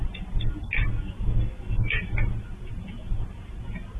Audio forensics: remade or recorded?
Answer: recorded